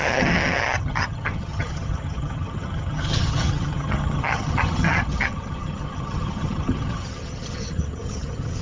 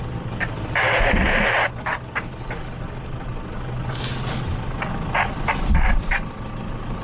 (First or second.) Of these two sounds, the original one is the second